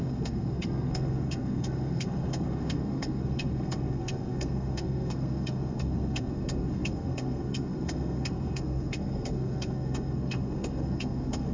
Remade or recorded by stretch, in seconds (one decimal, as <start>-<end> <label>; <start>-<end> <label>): 0.0-11.5 remade